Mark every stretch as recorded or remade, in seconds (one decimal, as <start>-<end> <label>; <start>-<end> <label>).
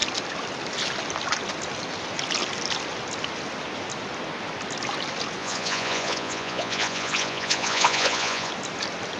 0.0-5.4 recorded; 5.4-8.5 remade; 8.5-9.2 recorded